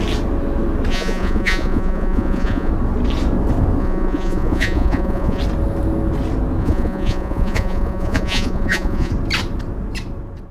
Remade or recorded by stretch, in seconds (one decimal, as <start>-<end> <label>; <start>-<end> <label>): 0.0-0.9 recorded; 0.9-2.7 remade; 2.7-3.8 recorded; 3.8-5.4 remade; 5.4-6.6 recorded; 6.6-9.1 remade; 9.1-10.5 recorded